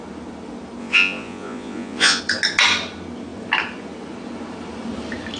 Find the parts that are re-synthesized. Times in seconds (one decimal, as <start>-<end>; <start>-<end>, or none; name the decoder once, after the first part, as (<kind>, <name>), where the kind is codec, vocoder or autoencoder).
0.8-2.2 (vocoder, Vocos)